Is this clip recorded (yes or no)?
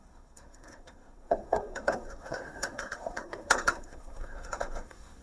no